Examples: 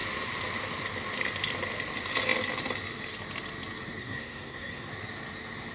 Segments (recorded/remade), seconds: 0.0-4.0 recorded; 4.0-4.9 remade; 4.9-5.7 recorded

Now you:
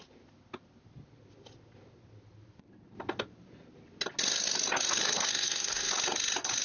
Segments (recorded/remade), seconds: 0.0-5.3 recorded; 5.3-5.9 remade; 5.9-6.6 recorded